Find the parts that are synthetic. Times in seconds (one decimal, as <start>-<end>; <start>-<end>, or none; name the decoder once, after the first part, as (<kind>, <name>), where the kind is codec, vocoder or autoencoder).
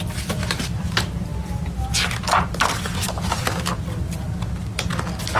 1.3-4.5 (vocoder, BigVGAN v2)